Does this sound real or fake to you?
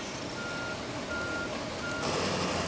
real